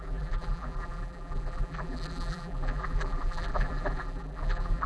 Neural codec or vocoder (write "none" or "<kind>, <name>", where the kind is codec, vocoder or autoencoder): vocoder, BigVGAN v2